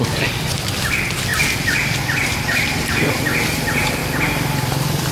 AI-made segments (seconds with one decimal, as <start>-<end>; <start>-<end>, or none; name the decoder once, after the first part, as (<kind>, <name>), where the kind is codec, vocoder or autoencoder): 4.0-5.1 (vocoder, BigVGAN v2)